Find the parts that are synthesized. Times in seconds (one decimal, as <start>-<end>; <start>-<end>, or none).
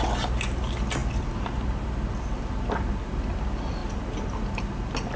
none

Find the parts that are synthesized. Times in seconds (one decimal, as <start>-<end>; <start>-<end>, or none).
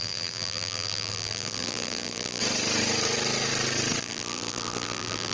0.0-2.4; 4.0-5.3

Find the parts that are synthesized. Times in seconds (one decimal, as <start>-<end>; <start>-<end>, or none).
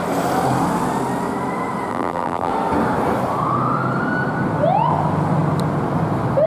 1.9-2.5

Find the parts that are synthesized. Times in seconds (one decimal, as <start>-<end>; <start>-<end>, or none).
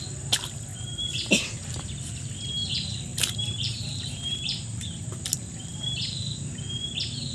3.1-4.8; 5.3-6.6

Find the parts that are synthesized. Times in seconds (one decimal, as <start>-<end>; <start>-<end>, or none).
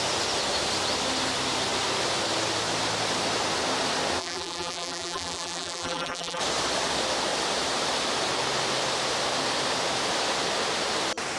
4.2-6.4